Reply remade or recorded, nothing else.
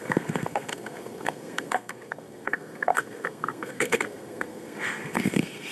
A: remade